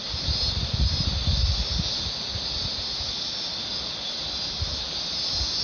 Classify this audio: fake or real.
real